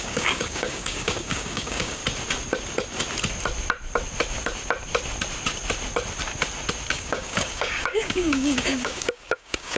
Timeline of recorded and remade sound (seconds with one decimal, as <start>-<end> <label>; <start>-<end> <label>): 0.0-2.0 remade; 2.0-6.9 recorded; 6.9-9.8 remade